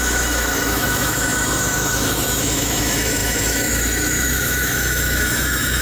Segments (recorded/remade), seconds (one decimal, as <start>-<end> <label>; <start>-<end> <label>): 0.0-5.8 remade

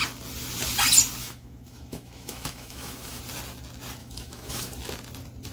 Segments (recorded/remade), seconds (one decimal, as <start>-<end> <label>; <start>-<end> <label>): 0.0-1.2 recorded; 1.2-3.2 remade; 3.2-4.0 recorded; 4.0-4.7 remade; 4.7-5.5 recorded

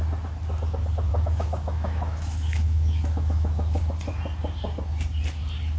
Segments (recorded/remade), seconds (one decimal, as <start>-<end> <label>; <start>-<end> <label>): 0.0-1.1 recorded; 1.1-3.8 remade; 3.8-5.8 recorded

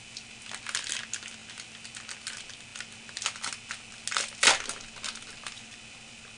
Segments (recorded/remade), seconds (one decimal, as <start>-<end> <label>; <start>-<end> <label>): 0.0-6.4 recorded